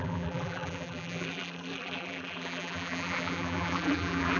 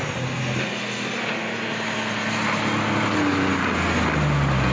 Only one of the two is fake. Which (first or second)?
first